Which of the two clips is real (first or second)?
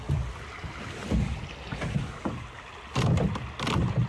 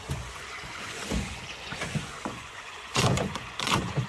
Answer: first